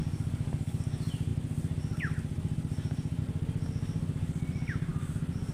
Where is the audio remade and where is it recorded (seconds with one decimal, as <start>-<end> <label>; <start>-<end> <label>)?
0.0-0.8 remade; 0.8-5.5 recorded